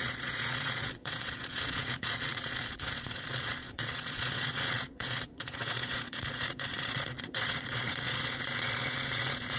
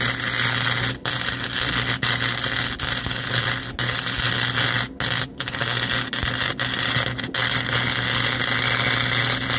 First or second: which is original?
second